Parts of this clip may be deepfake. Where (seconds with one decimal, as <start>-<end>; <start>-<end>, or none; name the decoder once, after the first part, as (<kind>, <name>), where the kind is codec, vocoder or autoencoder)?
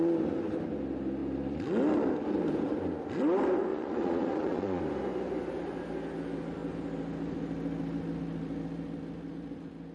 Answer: 3.7-4.8 (vocoder, Vocos)